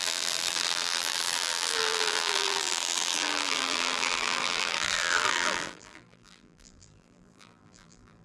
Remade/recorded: remade